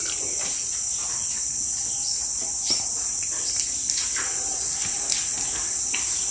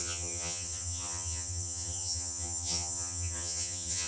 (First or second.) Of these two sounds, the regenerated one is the second